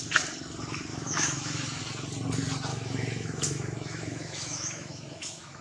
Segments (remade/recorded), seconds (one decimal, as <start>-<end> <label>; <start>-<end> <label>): 0.0-0.9 recorded; 0.9-1.8 remade; 1.8-2.7 recorded; 2.7-5.6 remade